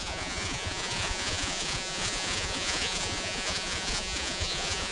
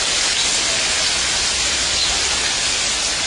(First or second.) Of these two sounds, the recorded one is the second